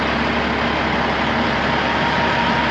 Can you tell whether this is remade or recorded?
recorded